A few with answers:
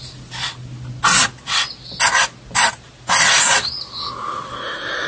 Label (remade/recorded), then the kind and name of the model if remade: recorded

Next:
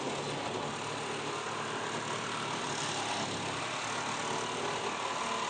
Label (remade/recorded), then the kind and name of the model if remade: recorded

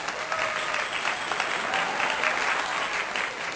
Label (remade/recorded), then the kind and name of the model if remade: recorded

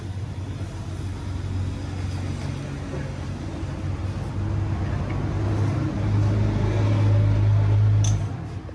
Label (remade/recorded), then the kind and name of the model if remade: recorded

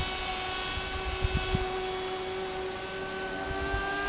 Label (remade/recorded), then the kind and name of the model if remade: recorded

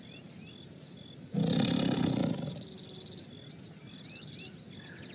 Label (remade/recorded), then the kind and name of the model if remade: recorded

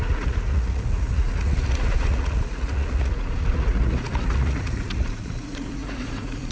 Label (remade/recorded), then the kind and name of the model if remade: remade, vocoder, Vocos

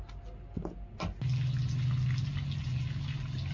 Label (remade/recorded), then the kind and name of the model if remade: recorded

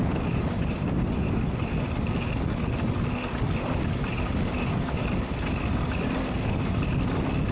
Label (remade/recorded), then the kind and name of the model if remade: recorded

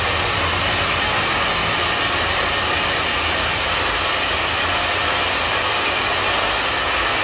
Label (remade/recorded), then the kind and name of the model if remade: recorded